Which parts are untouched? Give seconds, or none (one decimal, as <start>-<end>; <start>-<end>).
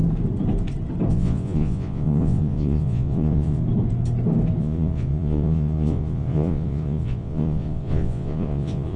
0.0-1.1; 3.6-4.6